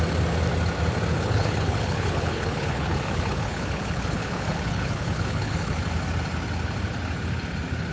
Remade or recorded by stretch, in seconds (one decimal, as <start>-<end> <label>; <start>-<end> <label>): 0.0-1.1 recorded; 1.1-5.8 remade; 5.8-7.9 recorded